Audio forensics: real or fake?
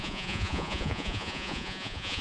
fake